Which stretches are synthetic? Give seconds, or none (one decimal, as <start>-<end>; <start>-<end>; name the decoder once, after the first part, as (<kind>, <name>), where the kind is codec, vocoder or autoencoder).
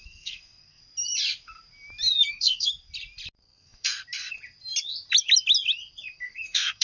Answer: 0.0-0.8 (codec, SNAC); 2.3-2.7; 3.4-3.9; 6.1-6.8